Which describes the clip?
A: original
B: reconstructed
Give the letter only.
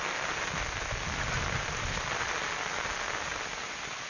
A